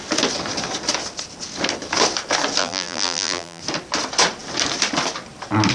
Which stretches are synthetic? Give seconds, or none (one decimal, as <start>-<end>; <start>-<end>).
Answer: 2.6-3.6